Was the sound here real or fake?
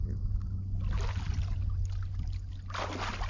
real